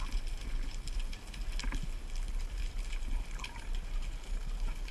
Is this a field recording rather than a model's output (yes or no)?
yes